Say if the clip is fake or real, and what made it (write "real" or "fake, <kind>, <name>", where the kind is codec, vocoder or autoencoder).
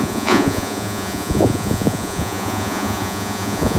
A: fake, vocoder, Vocos